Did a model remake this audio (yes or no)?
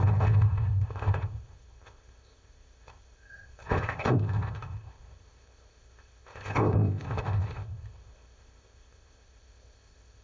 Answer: yes